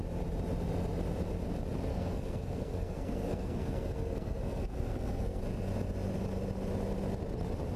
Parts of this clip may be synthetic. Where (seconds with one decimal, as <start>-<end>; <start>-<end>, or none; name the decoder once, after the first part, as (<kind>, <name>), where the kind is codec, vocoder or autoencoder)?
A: 1.9-5.4 (codec, SNAC)